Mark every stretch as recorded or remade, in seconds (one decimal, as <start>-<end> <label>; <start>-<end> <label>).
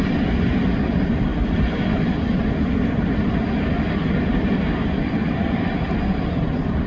0.0-6.9 recorded